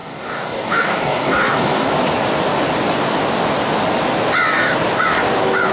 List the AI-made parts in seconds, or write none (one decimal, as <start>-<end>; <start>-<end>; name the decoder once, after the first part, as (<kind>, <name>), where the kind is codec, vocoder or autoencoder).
0.0-1.9 (codec, DAC)